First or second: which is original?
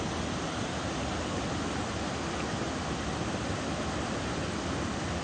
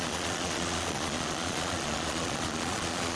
first